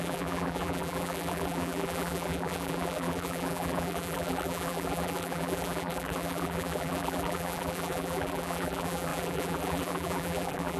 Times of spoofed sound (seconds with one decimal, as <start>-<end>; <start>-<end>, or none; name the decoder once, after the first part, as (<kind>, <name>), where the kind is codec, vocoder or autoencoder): 0.0-10.8 (vocoder, BigVGAN v2)